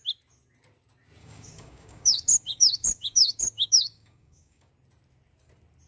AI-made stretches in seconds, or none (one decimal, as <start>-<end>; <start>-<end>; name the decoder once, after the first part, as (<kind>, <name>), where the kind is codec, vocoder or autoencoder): 1.2-4.7 (codec, DAC)